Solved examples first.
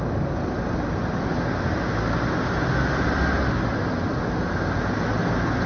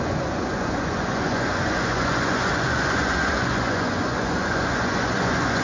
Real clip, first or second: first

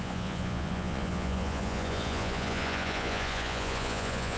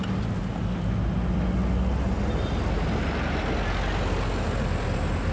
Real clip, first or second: second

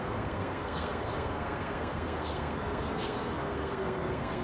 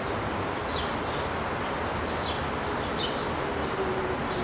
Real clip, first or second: second